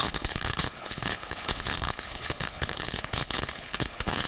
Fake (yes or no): yes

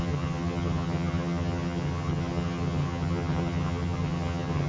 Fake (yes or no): yes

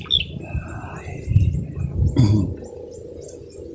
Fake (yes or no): no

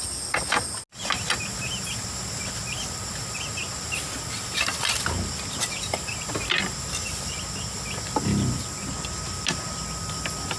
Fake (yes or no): no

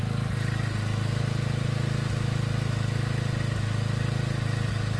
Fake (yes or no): no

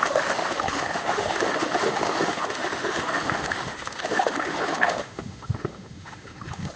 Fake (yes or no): yes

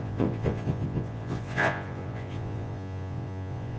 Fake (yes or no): yes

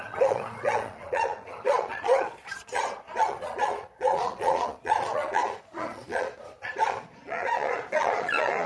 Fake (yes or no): yes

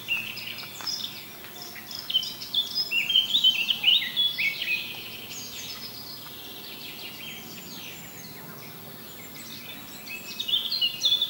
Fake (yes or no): no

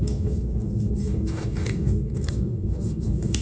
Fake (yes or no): yes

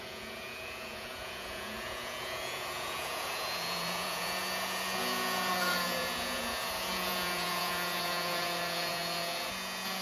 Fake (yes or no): yes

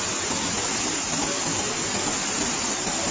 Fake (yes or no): no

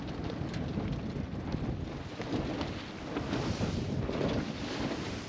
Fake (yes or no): no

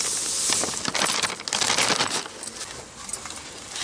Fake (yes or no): no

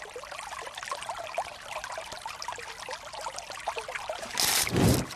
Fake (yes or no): no